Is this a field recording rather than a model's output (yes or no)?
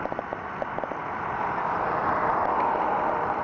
yes